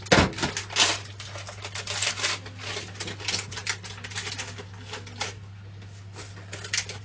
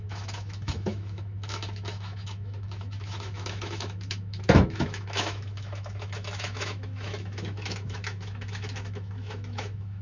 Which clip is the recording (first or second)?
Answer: first